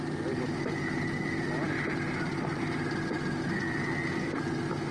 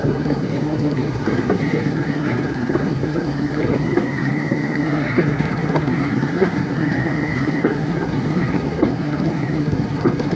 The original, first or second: first